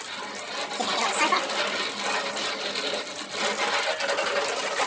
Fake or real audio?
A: real